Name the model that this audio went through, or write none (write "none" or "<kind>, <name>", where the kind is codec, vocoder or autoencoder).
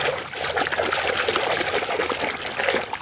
none